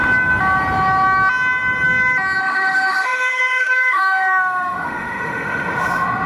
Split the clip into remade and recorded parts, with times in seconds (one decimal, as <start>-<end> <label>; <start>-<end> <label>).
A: 0.0-2.4 recorded; 2.4-6.3 remade